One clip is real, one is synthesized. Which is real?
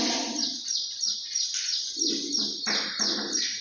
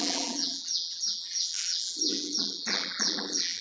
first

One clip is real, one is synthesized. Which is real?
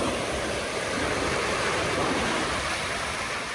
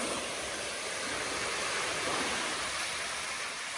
second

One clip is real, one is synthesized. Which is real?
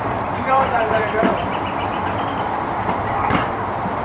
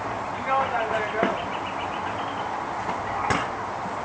second